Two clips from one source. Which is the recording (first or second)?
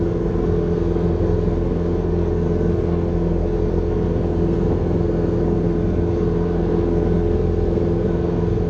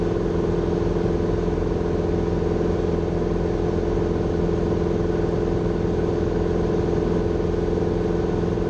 second